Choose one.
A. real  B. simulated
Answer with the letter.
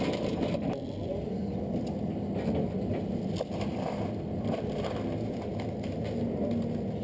A